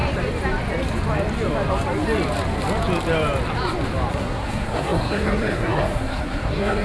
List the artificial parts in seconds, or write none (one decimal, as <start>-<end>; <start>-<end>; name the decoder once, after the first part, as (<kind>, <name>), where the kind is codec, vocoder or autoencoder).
4.1-6.8 (codec, SNAC)